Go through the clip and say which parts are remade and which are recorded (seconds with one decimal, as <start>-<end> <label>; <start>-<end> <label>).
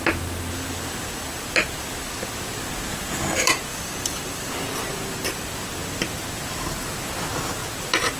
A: 0.0-3.7 recorded; 3.7-4.5 remade; 4.5-8.2 recorded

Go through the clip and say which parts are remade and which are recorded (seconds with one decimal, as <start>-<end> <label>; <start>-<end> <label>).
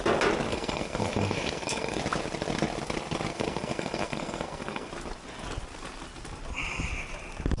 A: 0.0-0.5 recorded; 0.5-2.0 remade; 2.0-3.3 recorded; 3.3-4.9 remade; 4.9-7.6 recorded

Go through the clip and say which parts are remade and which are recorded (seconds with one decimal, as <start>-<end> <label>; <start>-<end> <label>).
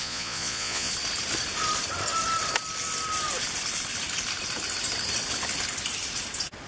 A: 0.0-0.9 remade; 0.9-6.7 recorded